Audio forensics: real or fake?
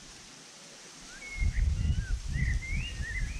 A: real